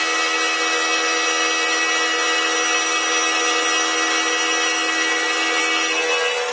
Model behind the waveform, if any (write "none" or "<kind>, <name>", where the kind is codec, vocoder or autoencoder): none